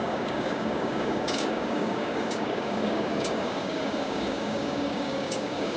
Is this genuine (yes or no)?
no